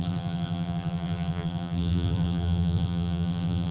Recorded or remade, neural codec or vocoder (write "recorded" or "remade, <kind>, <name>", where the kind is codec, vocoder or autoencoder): remade, vocoder, BigVGAN v2